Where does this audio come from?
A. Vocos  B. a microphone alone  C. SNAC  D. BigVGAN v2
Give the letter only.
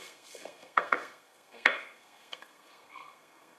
C